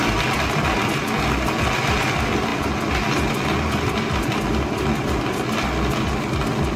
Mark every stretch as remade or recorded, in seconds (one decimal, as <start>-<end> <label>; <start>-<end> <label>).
0.0-6.8 recorded